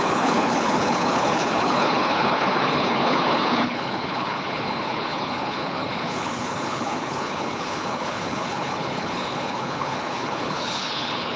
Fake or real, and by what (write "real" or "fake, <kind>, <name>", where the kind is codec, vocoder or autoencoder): fake, codec, HILCodec